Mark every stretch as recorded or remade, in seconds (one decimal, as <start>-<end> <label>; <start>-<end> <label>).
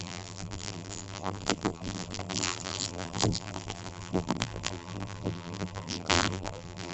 0.0-6.9 remade